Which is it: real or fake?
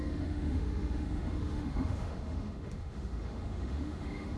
fake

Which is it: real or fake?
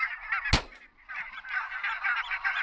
real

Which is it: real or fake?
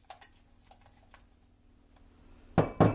real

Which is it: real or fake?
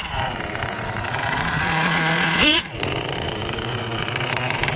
fake